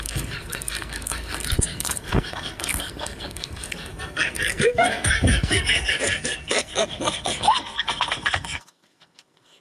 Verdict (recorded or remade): remade